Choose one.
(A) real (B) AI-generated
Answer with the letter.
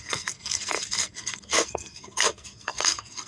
B